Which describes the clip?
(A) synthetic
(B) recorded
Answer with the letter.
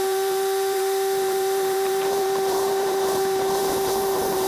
A